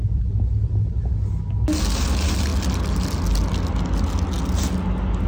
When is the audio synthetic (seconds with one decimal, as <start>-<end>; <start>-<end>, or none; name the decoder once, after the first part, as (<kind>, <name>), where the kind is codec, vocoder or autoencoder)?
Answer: none